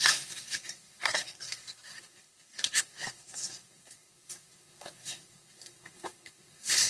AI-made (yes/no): yes